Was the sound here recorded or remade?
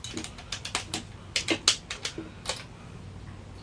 recorded